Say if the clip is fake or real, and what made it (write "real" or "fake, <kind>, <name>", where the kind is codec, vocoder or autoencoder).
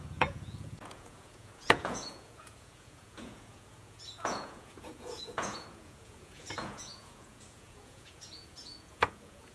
fake, vocoder, Vocos